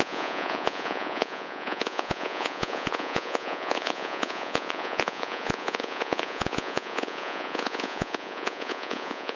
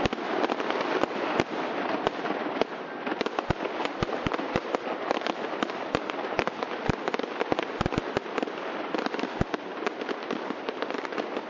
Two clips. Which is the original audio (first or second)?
second